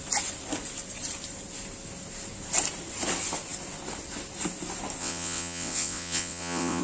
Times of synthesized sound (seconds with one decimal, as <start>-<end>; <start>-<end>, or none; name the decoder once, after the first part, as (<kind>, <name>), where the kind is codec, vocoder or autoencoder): 5.0-6.8 (vocoder, WaveNeXt)